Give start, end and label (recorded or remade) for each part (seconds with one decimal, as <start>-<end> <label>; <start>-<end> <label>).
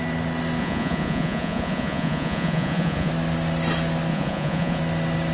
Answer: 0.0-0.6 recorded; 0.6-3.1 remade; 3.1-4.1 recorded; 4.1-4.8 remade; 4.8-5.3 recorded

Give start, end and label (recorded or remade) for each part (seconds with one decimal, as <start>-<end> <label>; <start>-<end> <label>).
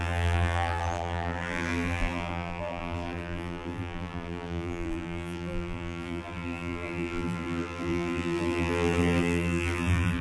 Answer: 0.0-10.2 remade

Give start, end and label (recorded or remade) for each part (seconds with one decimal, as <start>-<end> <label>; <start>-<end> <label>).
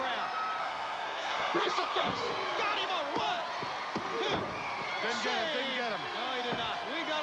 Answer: 0.0-0.6 recorded; 0.6-2.2 remade; 2.2-7.2 recorded